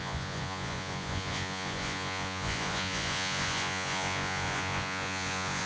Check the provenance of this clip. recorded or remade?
remade